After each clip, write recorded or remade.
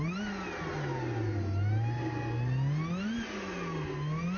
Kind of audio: recorded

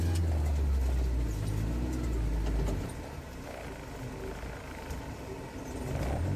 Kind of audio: recorded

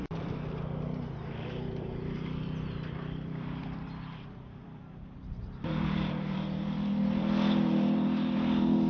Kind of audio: remade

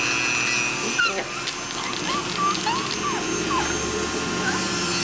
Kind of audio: recorded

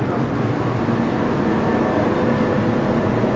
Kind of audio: recorded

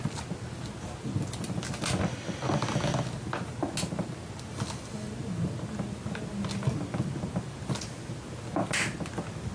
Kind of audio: recorded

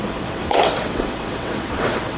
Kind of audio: remade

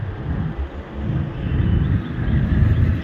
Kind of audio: recorded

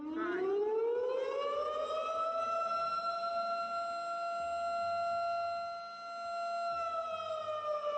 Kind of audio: recorded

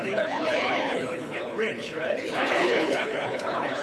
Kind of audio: remade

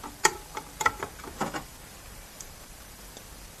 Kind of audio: remade